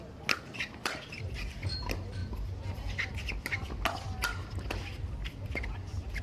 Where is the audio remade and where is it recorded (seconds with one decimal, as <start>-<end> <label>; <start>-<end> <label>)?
0.0-6.2 recorded